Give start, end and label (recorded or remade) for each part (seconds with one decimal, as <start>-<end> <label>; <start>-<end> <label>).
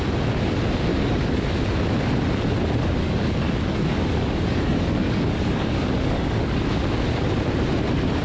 0.0-0.9 recorded; 0.9-1.5 remade; 1.5-3.0 recorded; 3.0-6.6 remade; 6.6-8.2 recorded